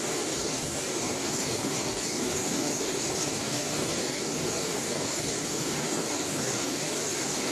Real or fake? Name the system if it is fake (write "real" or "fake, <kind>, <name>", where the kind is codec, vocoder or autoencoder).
fake, codec, DAC